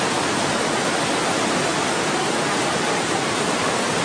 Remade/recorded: recorded